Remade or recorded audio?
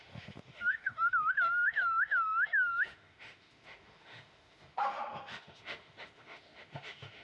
remade